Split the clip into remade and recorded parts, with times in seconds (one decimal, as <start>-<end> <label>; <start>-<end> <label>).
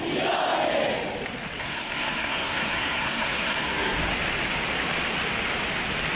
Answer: 0.0-1.6 recorded; 1.6-4.1 remade; 4.1-6.2 recorded